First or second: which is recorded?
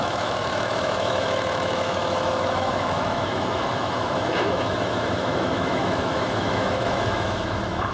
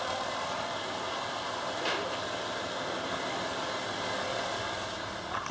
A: second